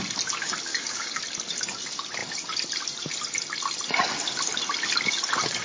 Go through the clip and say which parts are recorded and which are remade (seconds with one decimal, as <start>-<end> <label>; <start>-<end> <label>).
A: 0.0-0.7 recorded; 0.7-1.2 remade; 1.2-5.6 recorded